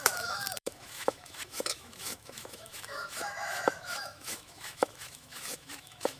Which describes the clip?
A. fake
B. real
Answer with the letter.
A